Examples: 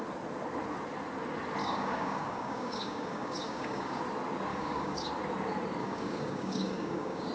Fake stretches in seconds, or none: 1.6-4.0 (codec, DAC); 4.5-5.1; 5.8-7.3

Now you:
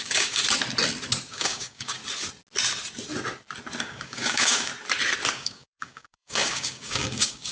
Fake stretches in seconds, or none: 0.0-0.4 (codec, DAC); 1.3-2.0; 3.8-4.7; 5.3-7.5

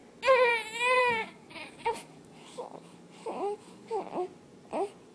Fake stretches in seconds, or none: 1.0-4.1 (codec, DAC)

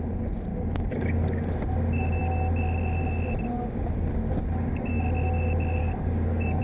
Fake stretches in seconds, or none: 0.5-1.5 (codec, DAC); 4.2-4.9; 5.8-6.6

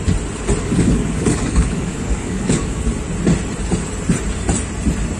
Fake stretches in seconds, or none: 0.6-2.8 (codec, DAC)

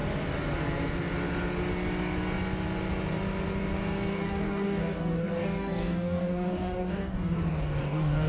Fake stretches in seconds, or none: 4.1-8.3 (codec, DAC)

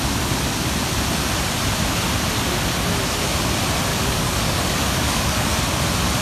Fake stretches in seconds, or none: 3.9-5.6 (codec, DAC)

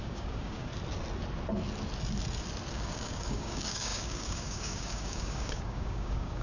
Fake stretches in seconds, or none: 0.0-0.7 (codec, DAC); 2.7-6.4